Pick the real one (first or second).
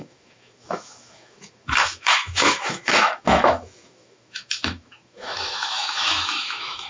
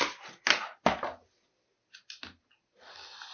second